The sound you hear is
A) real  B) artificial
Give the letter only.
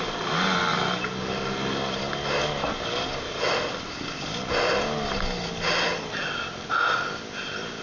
A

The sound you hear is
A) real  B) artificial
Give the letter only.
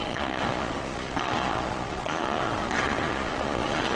B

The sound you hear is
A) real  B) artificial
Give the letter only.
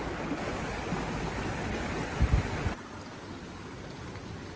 A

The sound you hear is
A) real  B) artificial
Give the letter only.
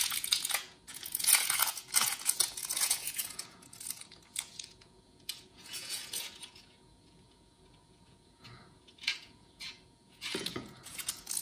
B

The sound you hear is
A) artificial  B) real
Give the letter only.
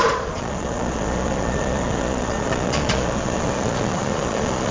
A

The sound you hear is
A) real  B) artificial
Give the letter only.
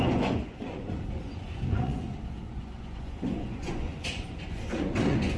B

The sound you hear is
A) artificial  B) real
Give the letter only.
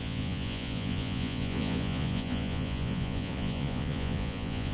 A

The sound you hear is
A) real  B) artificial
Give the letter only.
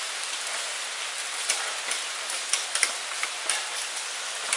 A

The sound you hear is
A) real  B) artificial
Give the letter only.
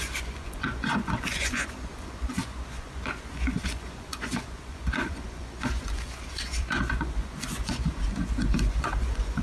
B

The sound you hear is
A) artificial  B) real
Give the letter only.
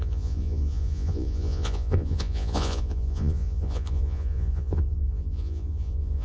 A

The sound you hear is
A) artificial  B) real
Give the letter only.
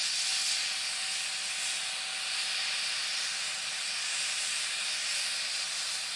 B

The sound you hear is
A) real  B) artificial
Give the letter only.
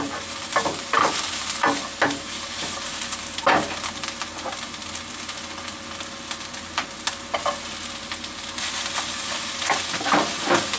A